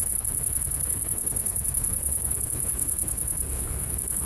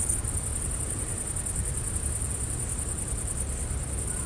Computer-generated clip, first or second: first